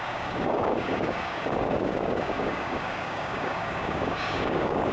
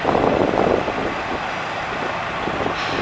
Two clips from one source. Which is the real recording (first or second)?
second